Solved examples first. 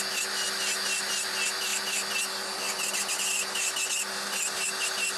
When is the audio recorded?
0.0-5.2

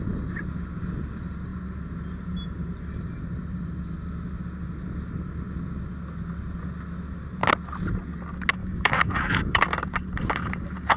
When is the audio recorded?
0.0-8.6; 9.6-11.0